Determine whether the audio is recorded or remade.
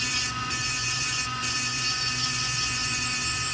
remade